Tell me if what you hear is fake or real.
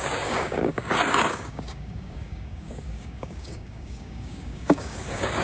fake